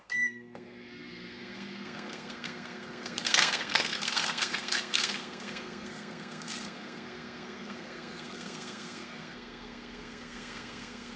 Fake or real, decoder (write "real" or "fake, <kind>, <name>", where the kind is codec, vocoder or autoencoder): fake, codec, SNAC